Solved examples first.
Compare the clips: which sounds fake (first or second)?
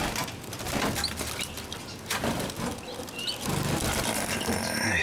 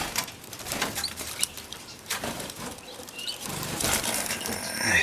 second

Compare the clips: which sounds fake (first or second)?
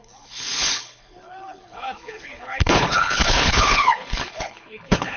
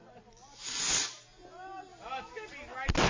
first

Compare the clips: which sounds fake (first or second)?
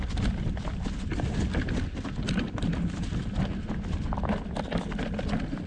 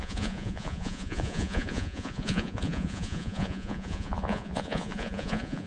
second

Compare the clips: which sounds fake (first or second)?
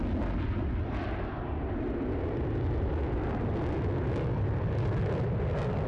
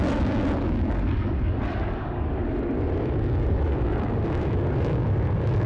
second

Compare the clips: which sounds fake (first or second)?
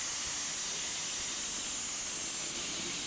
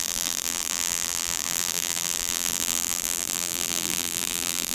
second